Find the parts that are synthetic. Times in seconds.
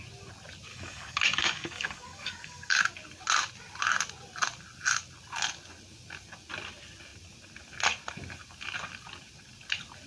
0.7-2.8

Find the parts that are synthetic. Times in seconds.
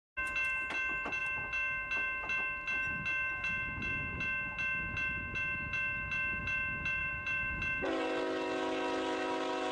7.0-7.6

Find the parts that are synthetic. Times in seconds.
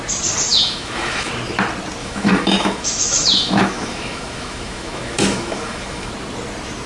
0.5-1.3; 2.0-6.1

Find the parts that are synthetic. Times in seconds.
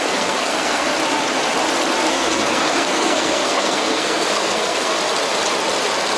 0.0-0.9; 2.1-4.9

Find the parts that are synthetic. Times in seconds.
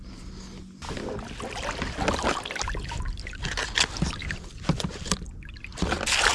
4.2-6.3